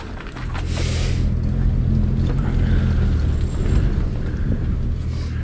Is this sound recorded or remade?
recorded